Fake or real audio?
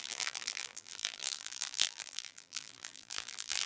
fake